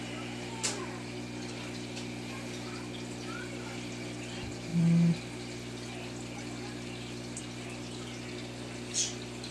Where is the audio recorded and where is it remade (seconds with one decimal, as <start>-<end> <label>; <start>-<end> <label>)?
0.0-9.5 recorded